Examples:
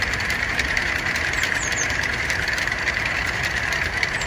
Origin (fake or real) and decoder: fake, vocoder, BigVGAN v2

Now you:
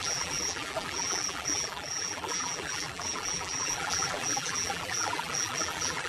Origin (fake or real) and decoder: fake, vocoder, BigVGAN v2